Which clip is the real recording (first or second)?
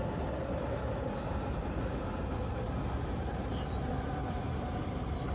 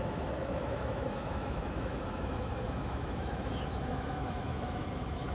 first